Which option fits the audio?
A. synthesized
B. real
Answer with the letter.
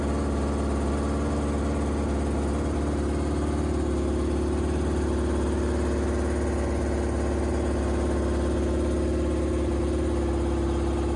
B